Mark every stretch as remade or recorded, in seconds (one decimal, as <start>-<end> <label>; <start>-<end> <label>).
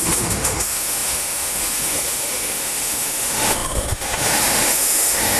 0.0-5.4 remade